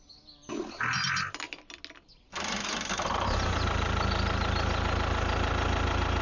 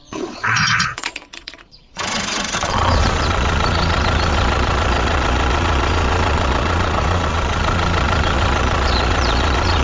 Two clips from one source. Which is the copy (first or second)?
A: second